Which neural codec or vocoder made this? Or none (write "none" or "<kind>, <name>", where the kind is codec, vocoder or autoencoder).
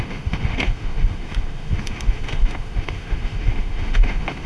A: autoencoder, DAC-VAE